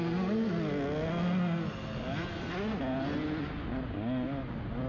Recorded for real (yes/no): yes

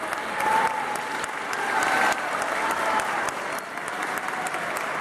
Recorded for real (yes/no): yes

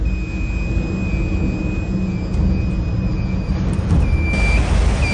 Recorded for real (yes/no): yes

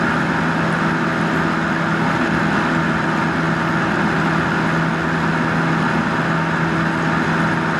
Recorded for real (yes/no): yes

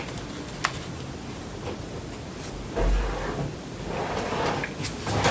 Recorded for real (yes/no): yes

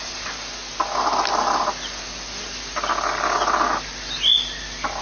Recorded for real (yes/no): yes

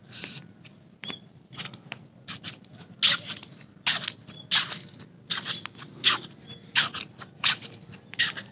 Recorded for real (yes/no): yes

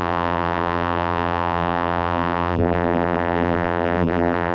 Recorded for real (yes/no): no